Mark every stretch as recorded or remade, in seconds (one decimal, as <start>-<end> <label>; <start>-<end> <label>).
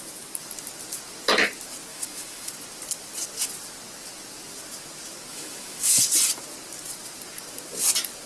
0.0-1.9 recorded; 1.9-2.5 remade; 2.5-5.3 recorded; 5.3-6.0 remade; 6.0-8.3 recorded